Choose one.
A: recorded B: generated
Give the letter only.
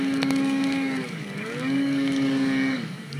B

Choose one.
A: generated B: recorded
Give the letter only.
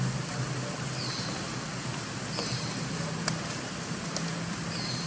B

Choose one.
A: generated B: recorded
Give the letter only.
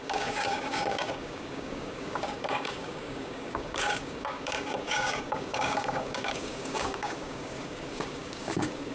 A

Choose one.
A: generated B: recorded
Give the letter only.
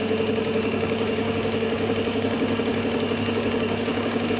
A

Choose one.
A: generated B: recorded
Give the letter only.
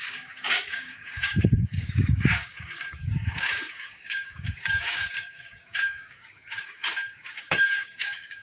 A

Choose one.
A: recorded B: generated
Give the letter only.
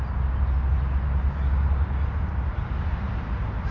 A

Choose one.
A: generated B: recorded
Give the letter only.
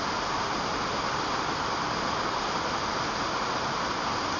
B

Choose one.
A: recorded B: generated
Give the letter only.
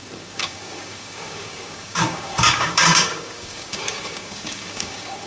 B